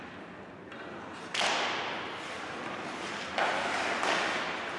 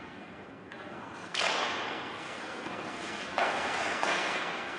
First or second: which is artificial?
second